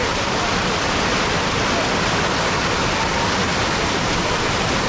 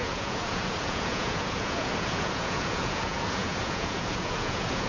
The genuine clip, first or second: first